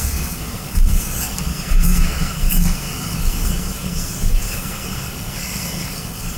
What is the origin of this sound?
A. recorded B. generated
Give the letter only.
B